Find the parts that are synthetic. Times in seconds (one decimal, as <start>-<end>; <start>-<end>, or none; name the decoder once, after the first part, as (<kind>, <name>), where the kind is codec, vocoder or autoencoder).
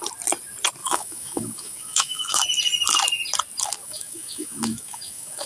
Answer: 0.8-2.4 (autoencoder, DAC-VAE); 3.8-5.5